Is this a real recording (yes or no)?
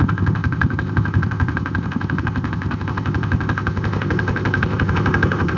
no